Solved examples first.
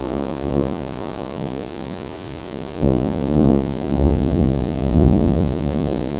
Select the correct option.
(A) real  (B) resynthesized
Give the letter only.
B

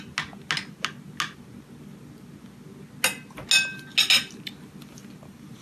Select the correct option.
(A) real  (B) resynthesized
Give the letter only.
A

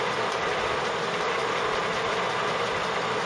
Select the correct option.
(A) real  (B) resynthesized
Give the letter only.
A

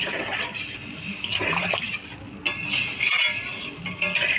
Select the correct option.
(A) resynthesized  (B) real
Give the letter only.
B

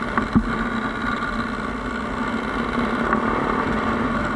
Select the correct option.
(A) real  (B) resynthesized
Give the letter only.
A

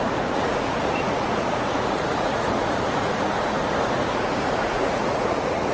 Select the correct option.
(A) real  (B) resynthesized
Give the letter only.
B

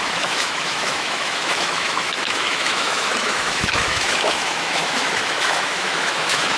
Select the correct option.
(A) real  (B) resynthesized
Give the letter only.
B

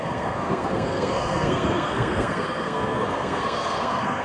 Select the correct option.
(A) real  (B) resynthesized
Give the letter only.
B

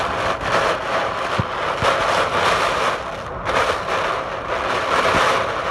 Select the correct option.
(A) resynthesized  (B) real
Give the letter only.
B